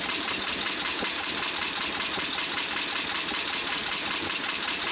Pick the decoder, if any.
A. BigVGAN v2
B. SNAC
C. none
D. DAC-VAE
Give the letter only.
A